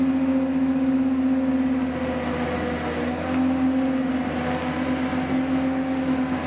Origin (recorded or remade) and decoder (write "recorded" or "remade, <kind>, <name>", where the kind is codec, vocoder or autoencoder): recorded